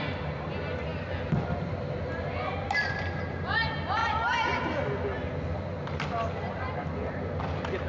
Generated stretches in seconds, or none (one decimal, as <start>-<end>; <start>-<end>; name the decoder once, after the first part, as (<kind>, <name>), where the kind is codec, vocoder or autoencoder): none